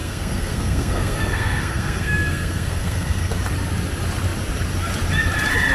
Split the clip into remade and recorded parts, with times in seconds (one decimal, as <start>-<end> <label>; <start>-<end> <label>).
0.0-3.4 remade; 3.4-5.7 recorded